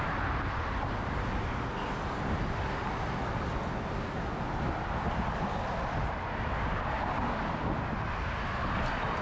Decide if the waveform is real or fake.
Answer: real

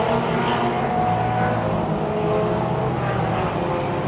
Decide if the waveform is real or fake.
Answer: real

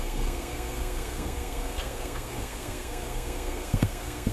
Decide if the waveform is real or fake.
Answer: fake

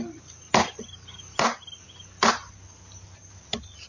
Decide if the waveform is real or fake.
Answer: real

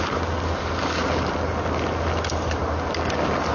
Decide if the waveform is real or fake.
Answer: real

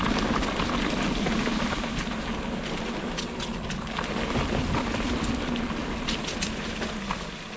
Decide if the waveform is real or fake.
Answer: real